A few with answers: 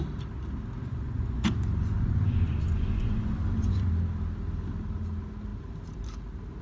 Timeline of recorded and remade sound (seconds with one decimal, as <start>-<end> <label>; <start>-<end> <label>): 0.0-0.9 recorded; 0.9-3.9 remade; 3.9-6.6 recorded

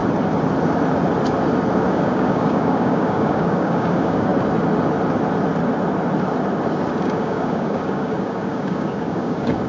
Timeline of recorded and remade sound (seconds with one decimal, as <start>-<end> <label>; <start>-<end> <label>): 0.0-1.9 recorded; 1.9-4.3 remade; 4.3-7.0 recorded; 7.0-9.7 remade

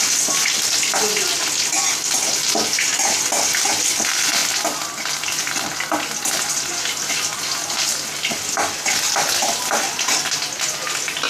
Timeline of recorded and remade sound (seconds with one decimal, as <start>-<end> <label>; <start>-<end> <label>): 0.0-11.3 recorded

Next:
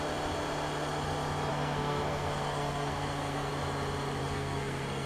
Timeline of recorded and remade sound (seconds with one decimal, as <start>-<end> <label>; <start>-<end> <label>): 0.0-1.5 recorded; 1.5-3.5 remade; 3.5-4.2 recorded; 4.2-5.1 remade

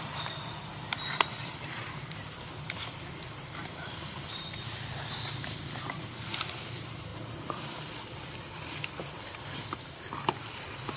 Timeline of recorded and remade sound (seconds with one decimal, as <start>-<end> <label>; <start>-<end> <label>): 0.0-11.0 remade

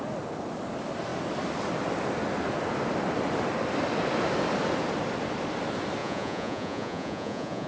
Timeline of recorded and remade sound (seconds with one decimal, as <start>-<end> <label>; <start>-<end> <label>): 0.0-6.0 recorded; 6.0-7.7 remade